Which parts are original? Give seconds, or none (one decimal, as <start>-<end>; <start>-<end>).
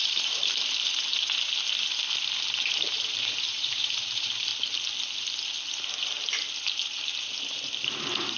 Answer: 1.1-2.6; 4.5-7.2